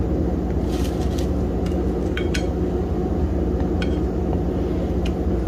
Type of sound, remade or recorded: recorded